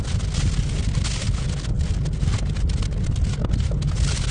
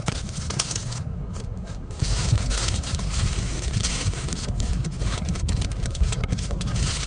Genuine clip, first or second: first